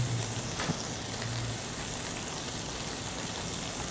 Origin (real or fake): real